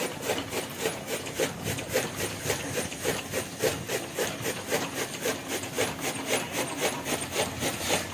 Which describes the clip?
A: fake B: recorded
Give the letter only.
B